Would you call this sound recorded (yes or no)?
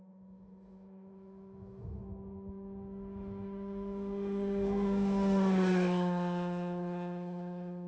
no